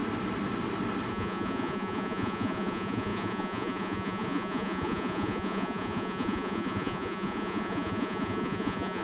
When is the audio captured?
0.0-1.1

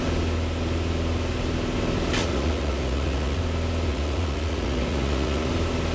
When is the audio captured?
0.0-2.2; 3.4-3.9; 5.5-5.9

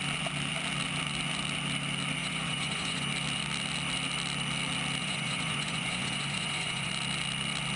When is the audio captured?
0.0-2.2; 3.1-5.0; 6.9-7.8

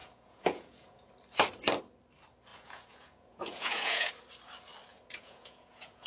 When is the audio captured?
1.1-2.5; 4.1-4.9

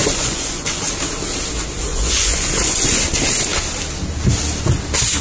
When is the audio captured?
0.8-1.9; 3.0-5.2

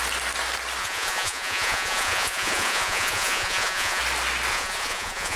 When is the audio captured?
0.0-0.8; 4.0-4.5